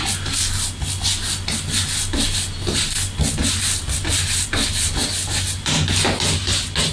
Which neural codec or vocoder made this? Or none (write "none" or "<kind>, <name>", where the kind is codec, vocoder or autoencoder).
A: none